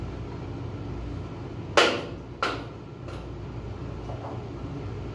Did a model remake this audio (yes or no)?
no